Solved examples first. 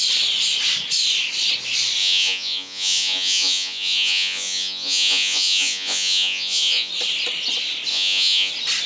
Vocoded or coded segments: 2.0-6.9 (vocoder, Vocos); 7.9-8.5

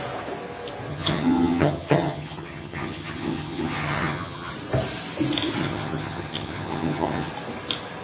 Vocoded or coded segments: 0.9-4.5 (vocoder, HiFi-GAN); 5.6-7.3

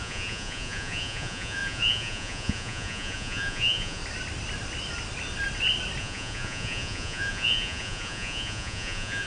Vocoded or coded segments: 0.0-4.0 (vocoder, Vocos); 6.0-9.3

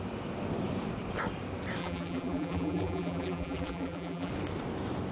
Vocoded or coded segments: 1.8-4.3 (vocoder, BigVGAN v2)

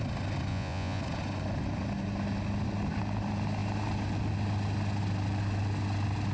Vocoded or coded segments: 0.5-1.0 (vocoder, Vocos)

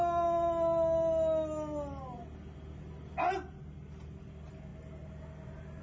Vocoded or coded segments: none

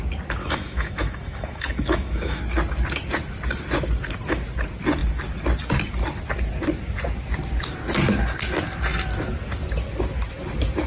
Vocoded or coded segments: 0.4-2.4 (autoencoder, DAC-VAE)

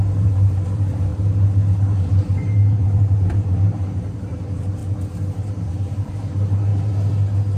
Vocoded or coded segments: 0.0-4.8 (vocoder, BigVGAN v2); 5.5-6.7